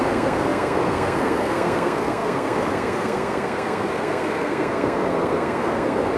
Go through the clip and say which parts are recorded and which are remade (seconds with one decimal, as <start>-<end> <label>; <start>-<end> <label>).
0.0-6.2 remade